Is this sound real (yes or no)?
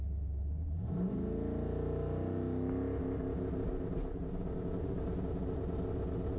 yes